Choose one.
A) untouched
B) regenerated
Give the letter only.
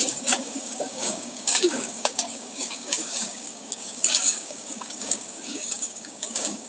B